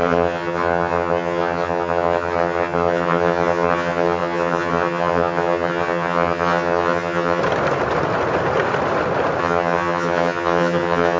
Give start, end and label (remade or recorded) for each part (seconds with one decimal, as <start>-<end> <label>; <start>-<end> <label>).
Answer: 0.0-7.4 remade; 7.4-9.4 recorded; 9.4-11.2 remade